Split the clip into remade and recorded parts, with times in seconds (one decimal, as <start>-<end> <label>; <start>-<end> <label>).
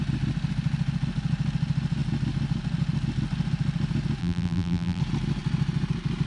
0.0-4.2 recorded; 4.2-5.0 remade; 5.0-6.3 recorded